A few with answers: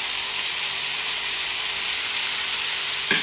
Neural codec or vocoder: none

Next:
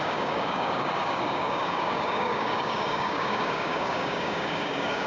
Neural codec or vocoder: codec, DAC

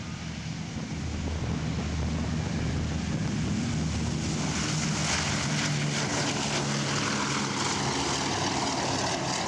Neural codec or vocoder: none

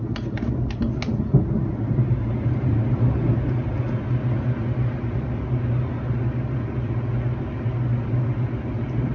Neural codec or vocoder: none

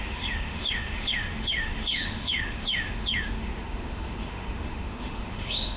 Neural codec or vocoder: autoencoder, DAC-VAE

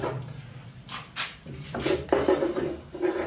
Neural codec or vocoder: vocoder, BigVGAN v2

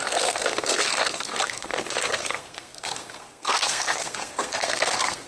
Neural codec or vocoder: codec, SNAC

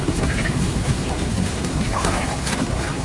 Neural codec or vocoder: codec, SNAC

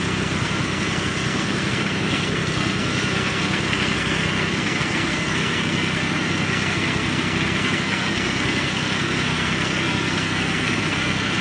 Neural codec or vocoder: codec, SNAC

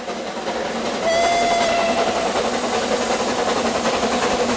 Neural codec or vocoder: none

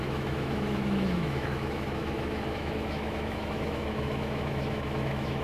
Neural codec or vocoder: autoencoder, DAC-VAE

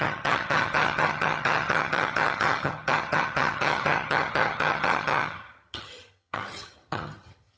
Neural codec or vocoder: vocoder, HiFi-GAN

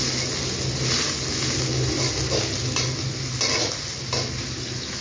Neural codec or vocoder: none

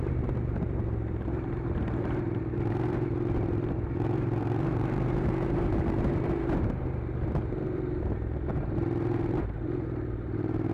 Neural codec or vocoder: vocoder, BigVGAN v2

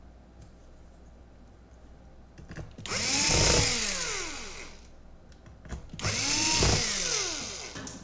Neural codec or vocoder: none